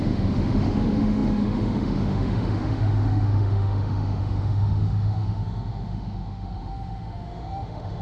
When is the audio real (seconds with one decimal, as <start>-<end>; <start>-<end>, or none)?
none